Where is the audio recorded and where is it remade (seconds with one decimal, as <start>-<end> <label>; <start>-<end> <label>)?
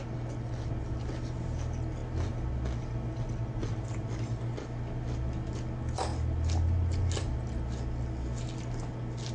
0.0-9.3 recorded